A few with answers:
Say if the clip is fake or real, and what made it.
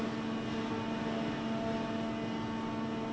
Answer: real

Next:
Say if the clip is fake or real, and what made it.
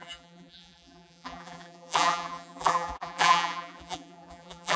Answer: fake, vocoder, BigVGAN v2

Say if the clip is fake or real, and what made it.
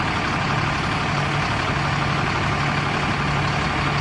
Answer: real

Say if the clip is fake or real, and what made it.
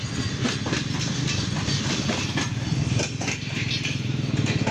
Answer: real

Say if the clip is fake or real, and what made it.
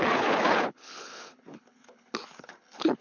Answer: fake, codec, HILCodec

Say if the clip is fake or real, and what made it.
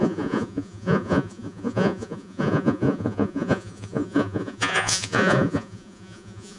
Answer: fake, vocoder, Vocos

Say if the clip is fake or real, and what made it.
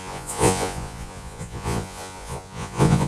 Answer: fake, vocoder, Vocos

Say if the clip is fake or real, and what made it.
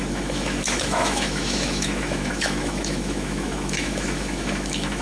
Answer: fake, autoencoder, DAC-VAE